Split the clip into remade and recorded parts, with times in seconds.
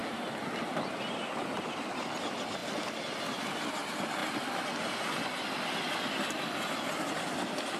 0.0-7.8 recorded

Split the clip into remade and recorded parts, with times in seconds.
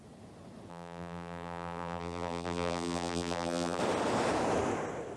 0.0-0.7 recorded; 0.7-3.8 remade; 3.8-5.2 recorded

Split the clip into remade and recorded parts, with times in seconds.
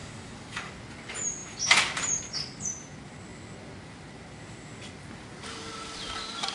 0.0-0.7 remade; 0.7-6.5 recorded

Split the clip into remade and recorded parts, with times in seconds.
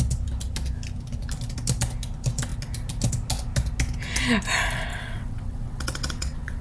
0.0-4.9 recorded; 4.9-6.6 remade